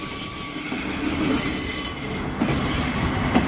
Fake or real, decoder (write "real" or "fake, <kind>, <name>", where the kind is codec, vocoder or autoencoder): real